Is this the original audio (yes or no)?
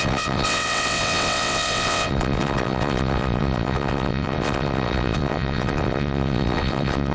no